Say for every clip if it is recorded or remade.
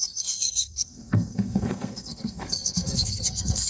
remade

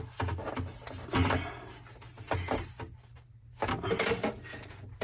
recorded